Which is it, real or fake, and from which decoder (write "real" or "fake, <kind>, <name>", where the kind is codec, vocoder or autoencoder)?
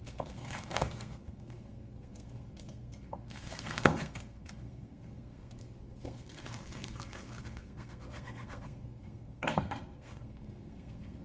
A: fake, codec, SNAC